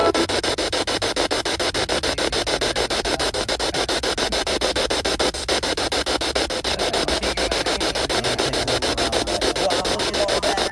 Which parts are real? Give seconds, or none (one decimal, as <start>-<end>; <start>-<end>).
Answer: 0.0-10.7